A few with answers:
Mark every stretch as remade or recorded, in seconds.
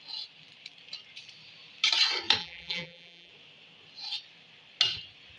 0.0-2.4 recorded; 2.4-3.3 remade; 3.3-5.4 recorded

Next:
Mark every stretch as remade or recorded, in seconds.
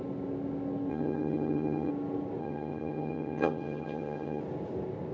0.0-0.9 recorded; 0.9-1.9 remade; 1.9-2.4 recorded; 2.4-4.4 remade; 4.4-5.1 recorded